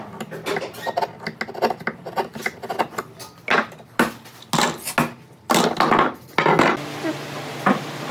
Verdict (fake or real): real